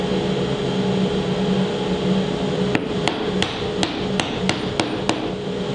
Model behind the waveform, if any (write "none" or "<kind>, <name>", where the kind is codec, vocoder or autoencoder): none